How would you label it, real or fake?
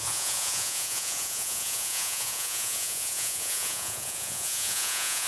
fake